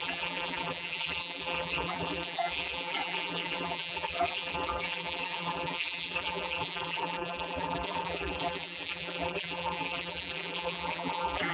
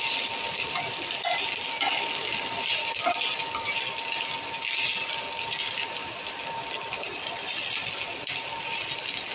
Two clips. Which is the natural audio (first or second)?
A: second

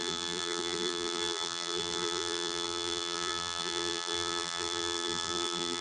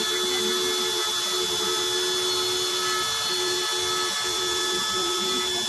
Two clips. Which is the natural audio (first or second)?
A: second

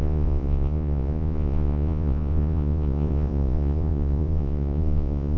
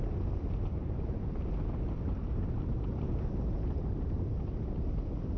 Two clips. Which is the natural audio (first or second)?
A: second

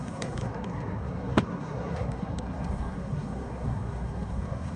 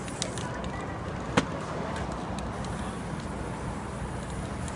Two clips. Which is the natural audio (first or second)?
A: second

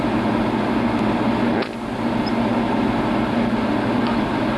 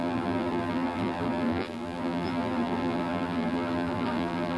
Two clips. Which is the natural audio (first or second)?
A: first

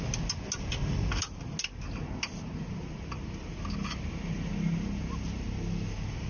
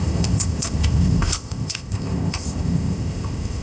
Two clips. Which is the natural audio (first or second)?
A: first